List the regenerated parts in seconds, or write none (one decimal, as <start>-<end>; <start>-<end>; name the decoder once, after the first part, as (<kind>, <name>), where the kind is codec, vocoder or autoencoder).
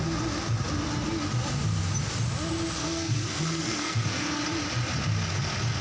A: 2.8-4.4 (codec, SNAC)